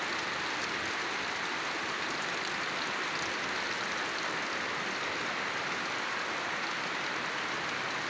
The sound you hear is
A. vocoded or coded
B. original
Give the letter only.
B